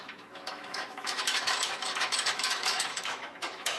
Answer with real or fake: fake